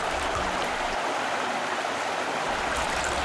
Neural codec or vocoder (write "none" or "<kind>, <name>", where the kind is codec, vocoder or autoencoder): vocoder, BigVGAN v2